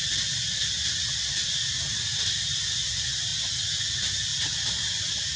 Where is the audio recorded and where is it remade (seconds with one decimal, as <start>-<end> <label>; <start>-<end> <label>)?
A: 0.0-3.3 remade; 3.3-3.8 recorded; 3.8-5.4 remade